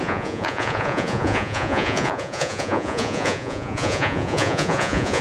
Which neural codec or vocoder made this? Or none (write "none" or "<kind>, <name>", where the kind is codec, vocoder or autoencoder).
vocoder, Vocos